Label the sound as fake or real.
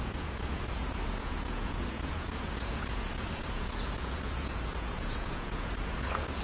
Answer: fake